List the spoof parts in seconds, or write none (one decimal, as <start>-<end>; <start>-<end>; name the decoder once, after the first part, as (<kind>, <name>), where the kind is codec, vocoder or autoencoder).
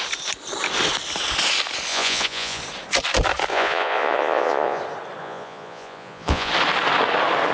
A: 1.9-2.6 (vocoder, Vocos); 3.5-4.8; 5.2-6.5